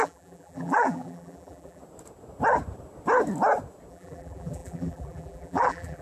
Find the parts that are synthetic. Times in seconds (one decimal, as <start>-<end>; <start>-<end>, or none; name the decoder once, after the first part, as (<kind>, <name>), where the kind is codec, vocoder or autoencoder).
0.0-1.8 (vocoder, BigVGAN v2); 3.9-6.0